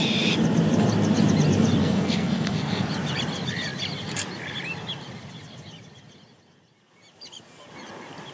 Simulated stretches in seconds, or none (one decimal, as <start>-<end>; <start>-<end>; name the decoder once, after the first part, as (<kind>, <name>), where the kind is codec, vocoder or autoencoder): 1.8-2.9 (codec, SNAC)